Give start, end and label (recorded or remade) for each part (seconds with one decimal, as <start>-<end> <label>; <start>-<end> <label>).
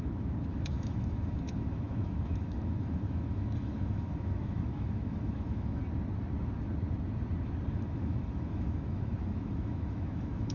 0.0-5.8 remade; 5.8-7.7 recorded; 7.7-10.5 remade